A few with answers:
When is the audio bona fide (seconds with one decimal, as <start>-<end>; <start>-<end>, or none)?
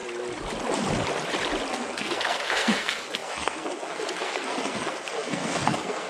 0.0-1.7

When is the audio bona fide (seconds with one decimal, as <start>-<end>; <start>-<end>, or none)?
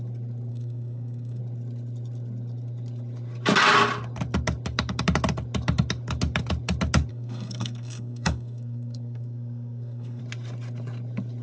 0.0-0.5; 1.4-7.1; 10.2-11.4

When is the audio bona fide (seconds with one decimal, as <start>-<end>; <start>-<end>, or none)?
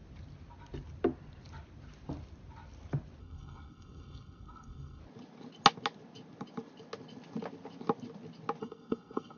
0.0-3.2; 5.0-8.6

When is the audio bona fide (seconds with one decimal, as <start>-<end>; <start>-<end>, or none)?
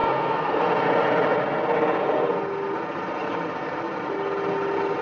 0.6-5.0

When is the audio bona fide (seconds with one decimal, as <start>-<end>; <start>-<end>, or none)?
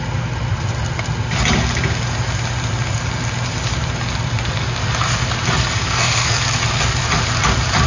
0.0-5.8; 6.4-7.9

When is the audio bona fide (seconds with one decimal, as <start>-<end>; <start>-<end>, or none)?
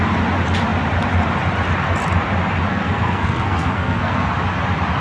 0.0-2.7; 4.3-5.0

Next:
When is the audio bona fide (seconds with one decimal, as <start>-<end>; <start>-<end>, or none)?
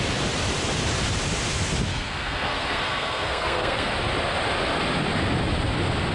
0.0-1.9; 3.9-6.1